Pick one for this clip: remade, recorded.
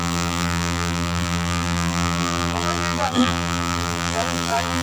remade